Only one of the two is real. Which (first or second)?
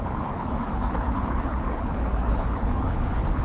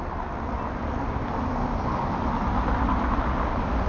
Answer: second